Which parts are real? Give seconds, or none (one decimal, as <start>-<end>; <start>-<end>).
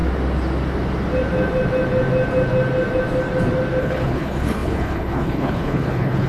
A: 0.0-3.8